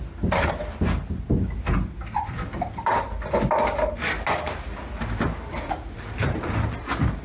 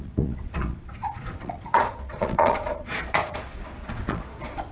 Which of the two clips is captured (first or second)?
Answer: first